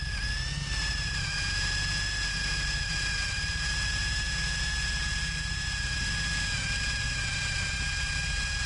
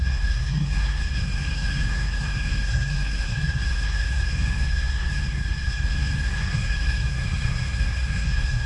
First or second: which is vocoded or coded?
second